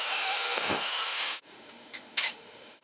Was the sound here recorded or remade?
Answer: remade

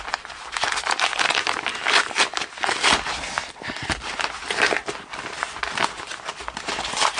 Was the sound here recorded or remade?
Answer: recorded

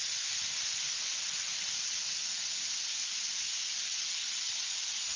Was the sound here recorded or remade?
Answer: recorded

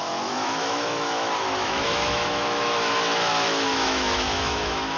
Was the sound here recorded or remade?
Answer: remade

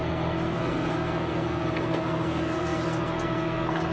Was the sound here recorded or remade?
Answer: remade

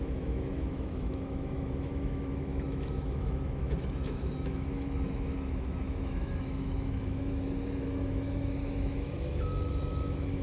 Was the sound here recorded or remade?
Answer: remade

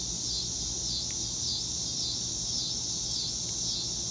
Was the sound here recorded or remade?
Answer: recorded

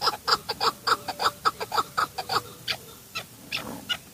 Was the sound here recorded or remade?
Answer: recorded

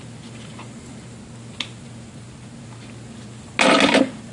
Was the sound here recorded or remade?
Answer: recorded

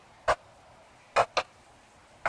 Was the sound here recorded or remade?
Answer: recorded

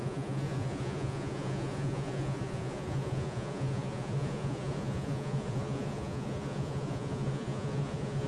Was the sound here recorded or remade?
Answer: remade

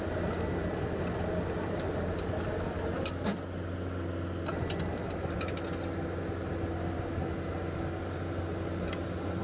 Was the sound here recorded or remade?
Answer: recorded